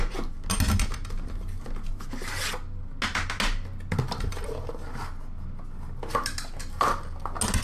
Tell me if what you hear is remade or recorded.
recorded